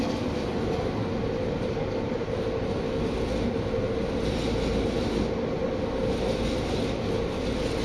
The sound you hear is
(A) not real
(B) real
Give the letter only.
B